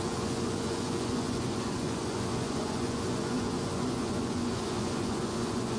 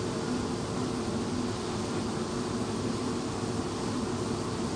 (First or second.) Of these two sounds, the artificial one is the first